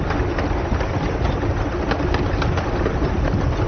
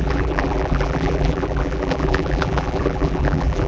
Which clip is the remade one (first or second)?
second